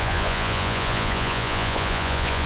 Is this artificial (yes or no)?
yes